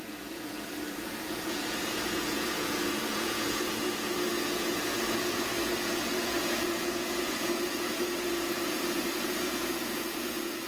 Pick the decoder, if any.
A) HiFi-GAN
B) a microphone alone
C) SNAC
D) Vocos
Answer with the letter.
D